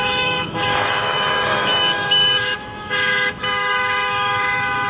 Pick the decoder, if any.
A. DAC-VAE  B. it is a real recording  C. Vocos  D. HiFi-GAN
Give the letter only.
A